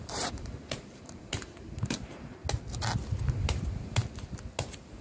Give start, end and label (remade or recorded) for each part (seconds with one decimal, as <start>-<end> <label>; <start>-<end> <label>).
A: 0.0-2.4 remade; 2.4-3.3 recorded; 3.3-4.0 remade; 4.0-4.6 recorded; 4.6-5.0 remade